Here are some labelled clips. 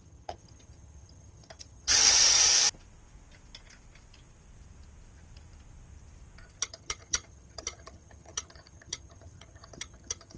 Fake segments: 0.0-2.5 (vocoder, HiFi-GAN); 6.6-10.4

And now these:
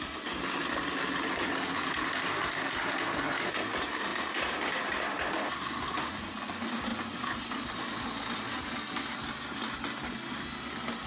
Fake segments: none

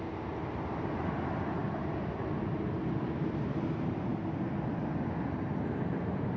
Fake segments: none

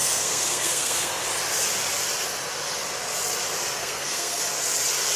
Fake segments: 0.0-1.1 (codec, SNAC); 3.8-4.4